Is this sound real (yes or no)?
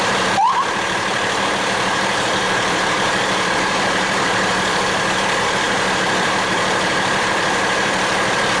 no